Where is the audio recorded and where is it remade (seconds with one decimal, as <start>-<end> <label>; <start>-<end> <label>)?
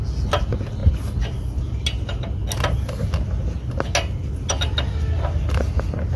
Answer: 0.0-6.2 recorded